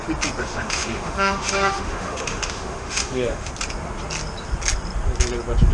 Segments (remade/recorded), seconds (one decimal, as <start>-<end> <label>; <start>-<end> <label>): 0.0-0.4 recorded; 0.4-3.5 remade; 3.5-5.7 recorded